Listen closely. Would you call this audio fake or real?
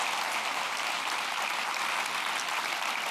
real